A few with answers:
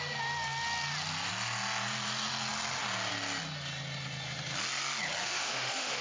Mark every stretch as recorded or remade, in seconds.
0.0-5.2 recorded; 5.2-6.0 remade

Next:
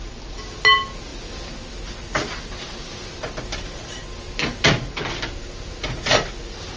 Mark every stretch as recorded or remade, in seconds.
0.0-6.8 recorded

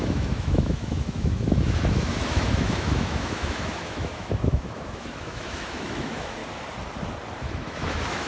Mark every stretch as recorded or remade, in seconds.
0.0-6.4 remade; 6.4-7.4 recorded; 7.4-8.3 remade

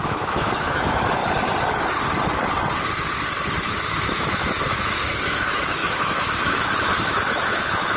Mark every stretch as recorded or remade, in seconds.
0.0-1.2 remade; 1.2-3.7 recorded; 3.7-8.0 remade

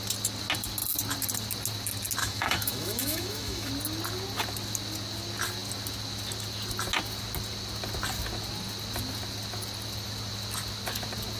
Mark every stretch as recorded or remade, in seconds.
0.0-2.2 recorded; 2.2-3.7 remade; 3.7-11.4 recorded

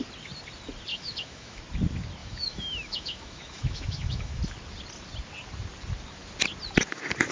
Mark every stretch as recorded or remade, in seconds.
0.0-0.9 recorded; 0.9-1.6 remade; 1.6-2.2 recorded; 2.2-4.4 remade; 4.4-7.3 recorded

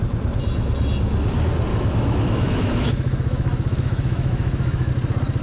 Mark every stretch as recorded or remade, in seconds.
0.0-1.7 recorded; 1.7-4.9 remade; 4.9-5.4 recorded

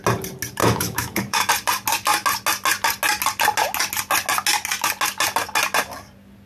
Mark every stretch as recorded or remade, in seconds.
0.0-0.6 recorded; 0.6-1.5 remade; 1.5-6.5 recorded